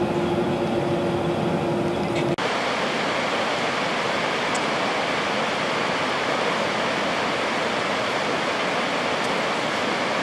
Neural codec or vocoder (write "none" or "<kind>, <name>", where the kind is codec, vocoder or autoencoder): none